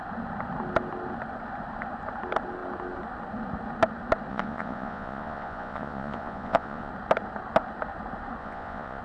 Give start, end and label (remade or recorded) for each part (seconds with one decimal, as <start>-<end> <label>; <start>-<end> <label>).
0.0-4.3 recorded; 4.3-6.9 remade; 6.9-8.4 recorded; 8.4-9.0 remade